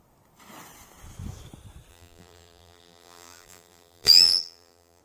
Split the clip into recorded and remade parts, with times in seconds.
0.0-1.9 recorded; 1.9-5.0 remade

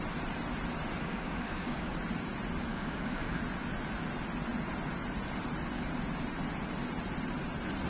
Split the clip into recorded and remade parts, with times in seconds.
0.0-1.0 recorded; 1.0-1.9 remade; 1.9-2.7 recorded; 2.7-3.4 remade; 3.4-7.9 recorded

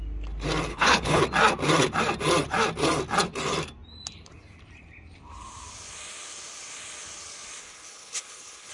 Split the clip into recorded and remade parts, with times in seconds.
0.0-0.7 recorded; 0.7-1.2 remade; 1.2-7.6 recorded; 7.6-8.7 remade

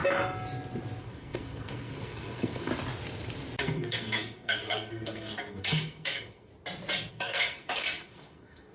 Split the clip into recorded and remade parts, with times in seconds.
0.0-1.0 recorded; 1.0-2.7 remade; 2.7-3.6 recorded; 3.6-6.5 remade; 6.5-7.1 recorded; 7.1-8.7 remade